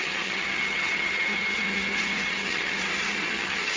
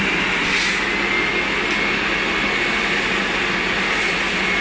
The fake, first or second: first